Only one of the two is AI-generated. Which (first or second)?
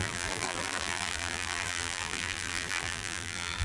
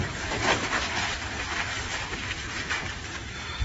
first